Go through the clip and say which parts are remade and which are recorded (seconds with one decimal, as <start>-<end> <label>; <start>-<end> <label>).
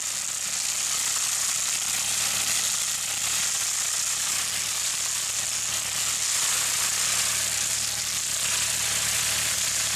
0.0-10.0 recorded